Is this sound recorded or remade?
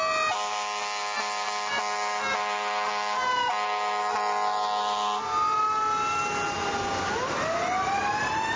recorded